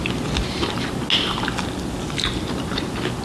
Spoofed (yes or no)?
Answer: no